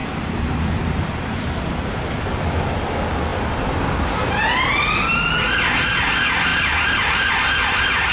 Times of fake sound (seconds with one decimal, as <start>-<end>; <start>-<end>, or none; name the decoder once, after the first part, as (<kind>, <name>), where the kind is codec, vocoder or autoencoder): 0.0-1.4 (vocoder, BigVGAN v2); 6.5-7.3

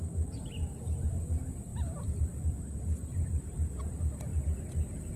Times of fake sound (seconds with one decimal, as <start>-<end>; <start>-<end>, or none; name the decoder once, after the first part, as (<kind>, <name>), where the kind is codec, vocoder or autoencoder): 1.7-2.3 (vocoder, BigVGAN v2); 3.1-3.9

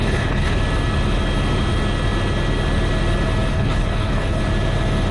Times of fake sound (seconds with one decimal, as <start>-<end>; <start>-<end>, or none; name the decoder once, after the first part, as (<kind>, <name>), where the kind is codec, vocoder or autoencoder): 0.0-0.6 (codec, HILCodec); 3.5-4.4

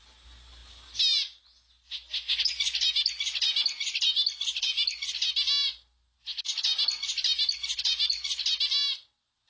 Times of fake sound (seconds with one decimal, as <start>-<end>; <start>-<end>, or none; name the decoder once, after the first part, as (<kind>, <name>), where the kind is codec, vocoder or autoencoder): none

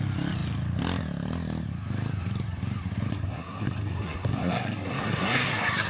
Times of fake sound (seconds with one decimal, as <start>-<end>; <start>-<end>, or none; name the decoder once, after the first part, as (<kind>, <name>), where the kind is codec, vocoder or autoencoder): 3.1-5.9 (codec, SNAC)

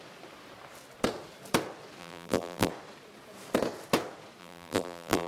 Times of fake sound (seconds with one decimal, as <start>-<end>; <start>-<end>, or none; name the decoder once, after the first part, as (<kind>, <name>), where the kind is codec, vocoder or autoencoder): 2.0-2.7 (vocoder, BigVGAN v2); 4.4-5.3

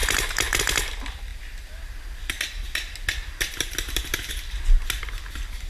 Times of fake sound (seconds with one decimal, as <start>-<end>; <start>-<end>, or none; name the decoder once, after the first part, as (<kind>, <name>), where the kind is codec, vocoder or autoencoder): none

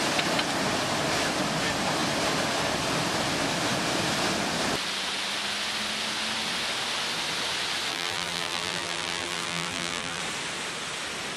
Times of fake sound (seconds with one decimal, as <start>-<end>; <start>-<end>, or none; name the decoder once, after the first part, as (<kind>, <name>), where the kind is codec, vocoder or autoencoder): 7.9-10.2 (vocoder, BigVGAN v2)